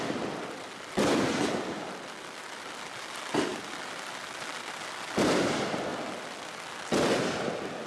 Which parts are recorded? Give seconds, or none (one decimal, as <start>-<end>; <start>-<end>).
0.0-7.9

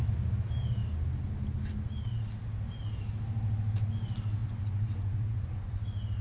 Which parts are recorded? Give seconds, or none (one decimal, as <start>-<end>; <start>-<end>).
0.0-4.4; 5.8-6.2

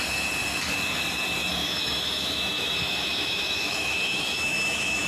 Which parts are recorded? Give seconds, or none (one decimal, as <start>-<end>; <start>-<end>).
0.0-1.6

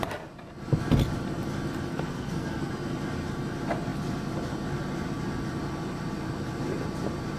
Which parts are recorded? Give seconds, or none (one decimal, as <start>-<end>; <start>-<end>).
0.0-1.9; 2.7-7.4

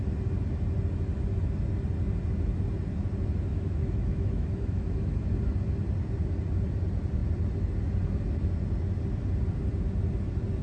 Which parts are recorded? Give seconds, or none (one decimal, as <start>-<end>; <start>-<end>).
0.0-3.5; 5.3-10.6

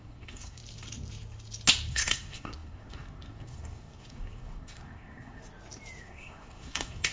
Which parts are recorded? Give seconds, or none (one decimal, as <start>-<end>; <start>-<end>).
0.6-1.9; 5.4-6.0

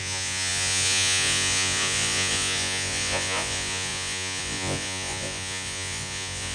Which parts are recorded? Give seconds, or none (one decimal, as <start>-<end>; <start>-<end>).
none